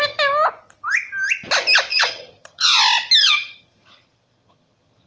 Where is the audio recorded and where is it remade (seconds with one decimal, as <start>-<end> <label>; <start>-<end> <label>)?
0.0-1.9 recorded; 1.9-2.8 remade; 2.8-3.2 recorded; 3.2-5.1 remade